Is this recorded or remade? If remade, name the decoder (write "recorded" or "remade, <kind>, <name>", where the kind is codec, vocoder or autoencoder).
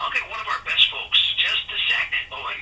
remade, vocoder, WaveNeXt